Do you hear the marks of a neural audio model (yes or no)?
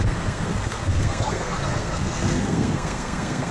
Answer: yes